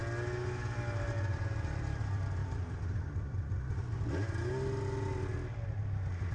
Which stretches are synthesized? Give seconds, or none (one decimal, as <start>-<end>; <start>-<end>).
1.1-2.0; 2.4-3.7